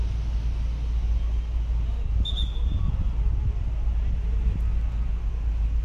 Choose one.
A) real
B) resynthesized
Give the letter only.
A